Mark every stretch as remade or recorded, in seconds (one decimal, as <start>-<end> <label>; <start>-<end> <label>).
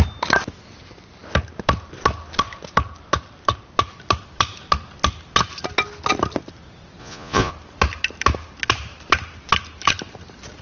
0.0-7.0 recorded; 7.0-7.5 remade; 7.5-10.6 recorded